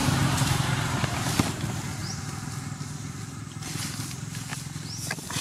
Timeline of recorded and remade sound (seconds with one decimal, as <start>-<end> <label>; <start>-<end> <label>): 0.0-1.4 remade; 1.4-5.4 recorded